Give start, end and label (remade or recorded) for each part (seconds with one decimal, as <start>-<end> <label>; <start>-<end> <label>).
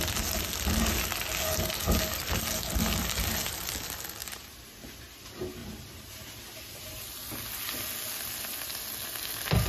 0.0-4.2 recorded; 4.2-5.0 remade; 5.0-5.6 recorded; 5.6-6.3 remade; 6.3-9.7 recorded